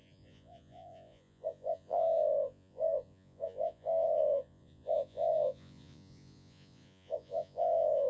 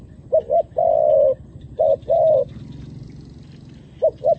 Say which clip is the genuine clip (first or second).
second